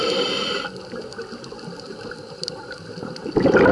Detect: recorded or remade recorded